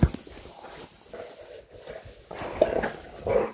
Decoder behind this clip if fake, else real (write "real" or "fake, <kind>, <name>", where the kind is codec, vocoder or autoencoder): real